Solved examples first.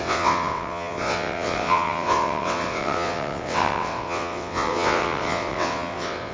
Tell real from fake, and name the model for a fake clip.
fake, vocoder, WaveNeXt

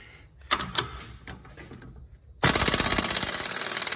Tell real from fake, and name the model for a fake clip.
real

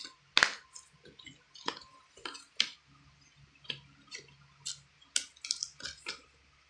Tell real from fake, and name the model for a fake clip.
real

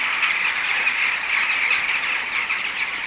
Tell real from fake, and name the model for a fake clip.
real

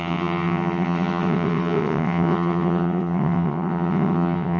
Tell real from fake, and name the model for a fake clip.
fake, vocoder, WaveNeXt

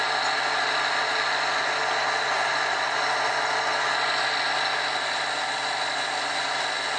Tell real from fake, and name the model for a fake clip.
real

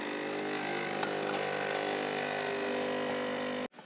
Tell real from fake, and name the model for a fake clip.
real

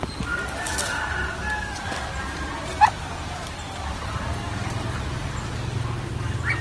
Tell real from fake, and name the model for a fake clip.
real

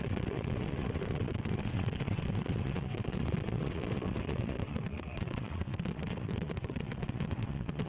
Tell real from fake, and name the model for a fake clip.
fake, vocoder, WaveNeXt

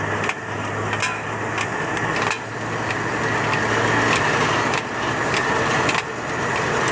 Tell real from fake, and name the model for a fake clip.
real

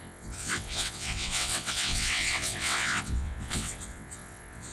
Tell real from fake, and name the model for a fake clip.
fake, vocoder, WaveNeXt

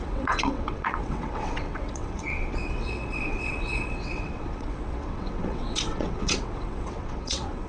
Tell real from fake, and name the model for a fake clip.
fake, vocoder, WaveNeXt